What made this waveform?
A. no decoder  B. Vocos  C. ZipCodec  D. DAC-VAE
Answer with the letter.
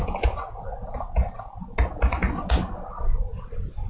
A